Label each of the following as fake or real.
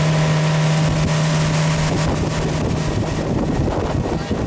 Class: real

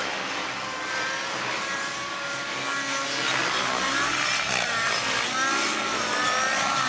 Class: real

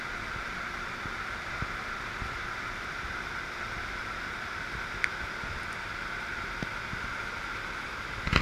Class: real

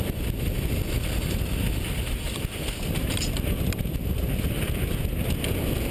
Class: real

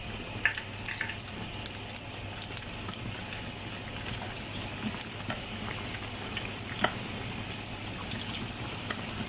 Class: real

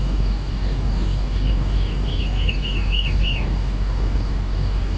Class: fake